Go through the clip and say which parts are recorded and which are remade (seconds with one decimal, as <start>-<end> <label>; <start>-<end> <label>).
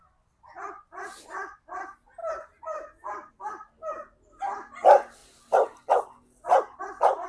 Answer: 0.0-7.3 recorded